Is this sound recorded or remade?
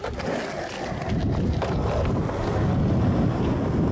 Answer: recorded